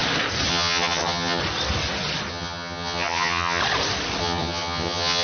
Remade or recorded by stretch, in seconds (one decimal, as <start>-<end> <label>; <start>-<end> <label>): 0.0-0.5 recorded; 0.5-1.4 remade; 1.4-2.3 recorded; 2.3-3.6 remade; 3.6-4.2 recorded; 4.2-5.2 remade